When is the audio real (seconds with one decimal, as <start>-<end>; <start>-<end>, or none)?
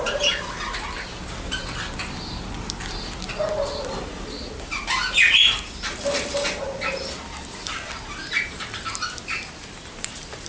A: 0.0-10.5